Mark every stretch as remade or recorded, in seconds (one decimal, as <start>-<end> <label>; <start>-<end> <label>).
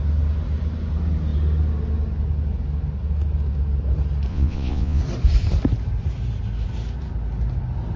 0.0-4.3 recorded; 4.3-5.0 remade; 5.0-8.0 recorded